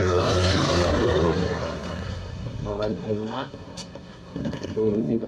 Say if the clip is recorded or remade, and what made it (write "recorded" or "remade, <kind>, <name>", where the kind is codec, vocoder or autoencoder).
remade, codec, SNAC